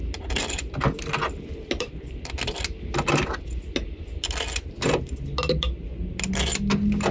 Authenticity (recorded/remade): recorded